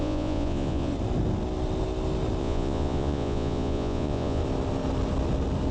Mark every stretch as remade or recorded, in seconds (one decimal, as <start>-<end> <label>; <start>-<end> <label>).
0.0-0.9 remade; 0.9-2.4 recorded; 2.4-4.4 remade; 4.4-5.7 recorded